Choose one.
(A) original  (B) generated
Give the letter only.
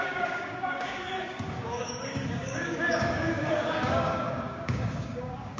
B